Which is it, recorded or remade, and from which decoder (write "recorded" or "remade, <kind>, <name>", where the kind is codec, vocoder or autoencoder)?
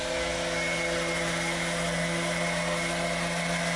recorded